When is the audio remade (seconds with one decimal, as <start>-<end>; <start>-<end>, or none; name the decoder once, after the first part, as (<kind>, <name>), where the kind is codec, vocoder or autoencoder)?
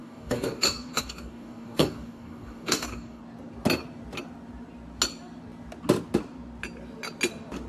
0.0-3.2 (codec, DAC)